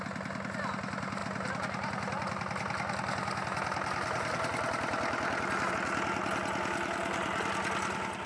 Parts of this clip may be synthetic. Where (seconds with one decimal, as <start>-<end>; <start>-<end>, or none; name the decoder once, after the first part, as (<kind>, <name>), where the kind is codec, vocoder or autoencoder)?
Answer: none